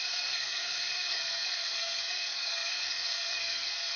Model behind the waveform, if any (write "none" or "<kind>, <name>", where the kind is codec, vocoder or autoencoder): codec, SNAC